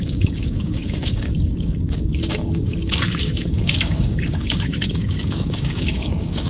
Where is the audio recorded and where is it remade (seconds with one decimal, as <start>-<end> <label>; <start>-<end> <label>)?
0.0-6.5 remade